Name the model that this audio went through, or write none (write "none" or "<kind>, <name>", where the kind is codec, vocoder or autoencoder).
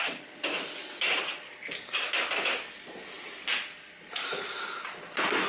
none